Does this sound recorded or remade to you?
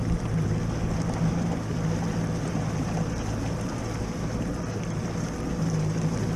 recorded